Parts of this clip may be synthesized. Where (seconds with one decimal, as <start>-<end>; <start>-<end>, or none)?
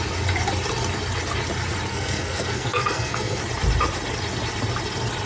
1.9-3.4